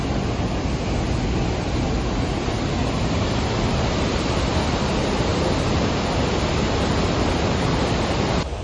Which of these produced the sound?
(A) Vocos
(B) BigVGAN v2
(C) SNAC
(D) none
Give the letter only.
D